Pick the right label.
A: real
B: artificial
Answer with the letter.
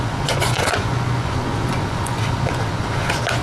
B